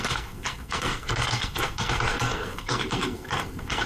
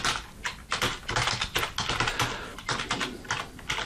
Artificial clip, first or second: first